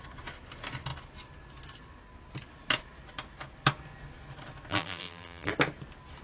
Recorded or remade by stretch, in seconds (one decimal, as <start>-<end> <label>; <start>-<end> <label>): 0.0-4.7 recorded; 4.7-5.5 remade; 5.5-6.2 recorded